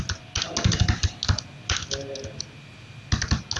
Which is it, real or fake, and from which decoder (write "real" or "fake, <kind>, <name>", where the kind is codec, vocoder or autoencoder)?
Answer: real